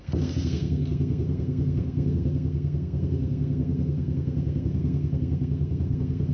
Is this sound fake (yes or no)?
yes